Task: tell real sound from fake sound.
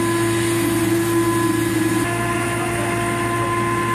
real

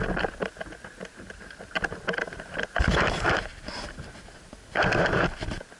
real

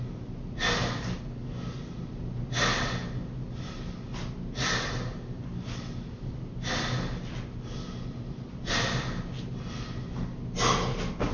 real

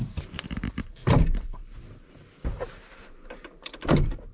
fake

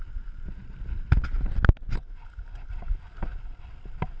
real